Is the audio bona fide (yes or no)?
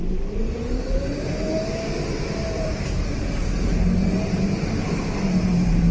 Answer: no